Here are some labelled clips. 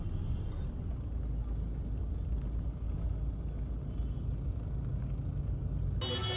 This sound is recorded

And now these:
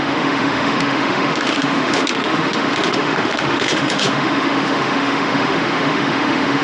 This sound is remade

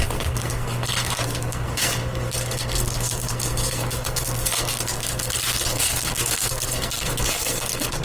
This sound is remade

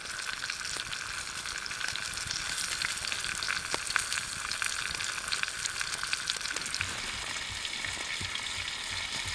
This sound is recorded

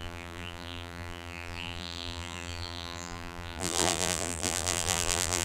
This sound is remade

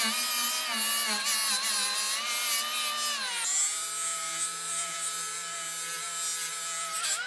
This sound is recorded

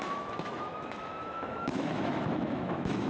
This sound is remade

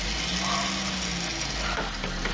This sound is recorded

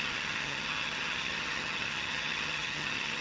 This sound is remade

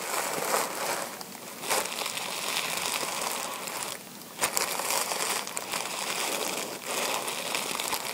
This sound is recorded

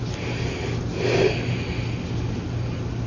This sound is recorded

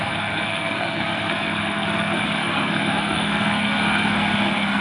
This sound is remade